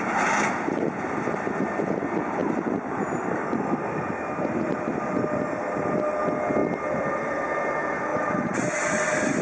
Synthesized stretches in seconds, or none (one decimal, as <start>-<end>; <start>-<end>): 2.4-6.0; 8.1-8.7